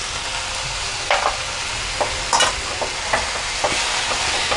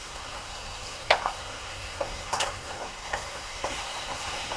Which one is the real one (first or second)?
first